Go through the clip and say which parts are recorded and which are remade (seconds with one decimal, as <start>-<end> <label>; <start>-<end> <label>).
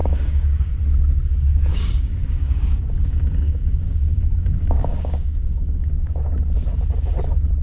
0.0-0.7 remade; 0.7-1.7 recorded; 1.7-6.2 remade; 6.2-7.6 recorded